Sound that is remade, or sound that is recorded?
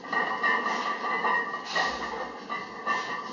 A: recorded